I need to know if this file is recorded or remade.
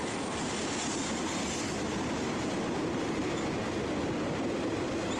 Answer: recorded